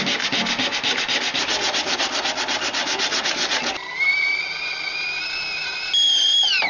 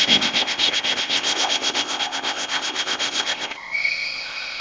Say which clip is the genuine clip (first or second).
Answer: first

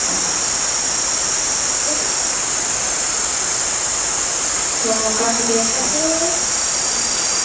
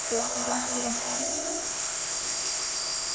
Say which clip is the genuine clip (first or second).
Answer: first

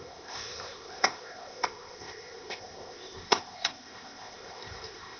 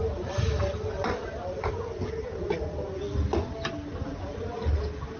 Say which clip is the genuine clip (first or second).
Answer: second